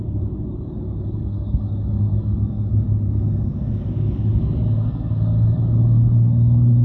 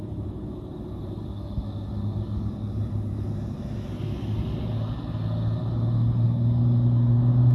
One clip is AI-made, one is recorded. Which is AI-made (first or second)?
first